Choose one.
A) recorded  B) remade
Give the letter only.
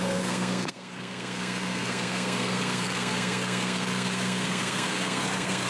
B